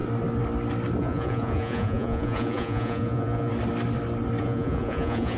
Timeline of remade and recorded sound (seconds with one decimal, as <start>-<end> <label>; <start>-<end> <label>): 0.0-1.0 recorded; 1.0-3.5 remade; 3.5-4.4 recorded; 4.4-5.4 remade